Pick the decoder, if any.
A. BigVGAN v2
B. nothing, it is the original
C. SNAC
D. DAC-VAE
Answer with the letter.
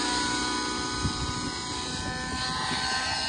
B